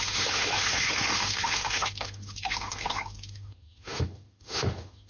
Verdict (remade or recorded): remade